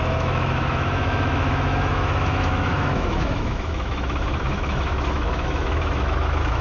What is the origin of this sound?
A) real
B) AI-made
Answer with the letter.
B